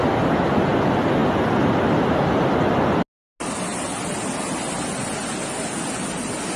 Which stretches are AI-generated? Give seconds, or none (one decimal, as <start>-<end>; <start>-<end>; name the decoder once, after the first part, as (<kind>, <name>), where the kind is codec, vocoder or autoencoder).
none